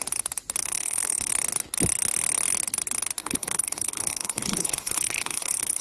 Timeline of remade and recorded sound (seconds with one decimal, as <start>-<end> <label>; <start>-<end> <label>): 0.0-0.6 recorded; 0.6-1.3 remade; 1.3-3.2 recorded; 3.2-5.8 remade